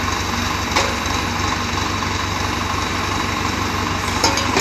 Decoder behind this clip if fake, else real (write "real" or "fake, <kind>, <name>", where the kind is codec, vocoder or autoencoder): real